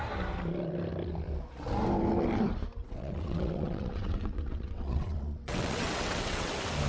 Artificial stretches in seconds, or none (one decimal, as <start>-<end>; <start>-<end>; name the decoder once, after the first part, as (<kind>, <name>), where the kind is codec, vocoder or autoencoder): 2.8-6.5 (vocoder, WaveNeXt)